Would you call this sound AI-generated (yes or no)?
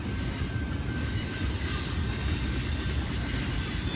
no